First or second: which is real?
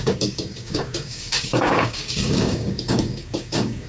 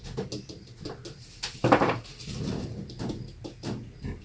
second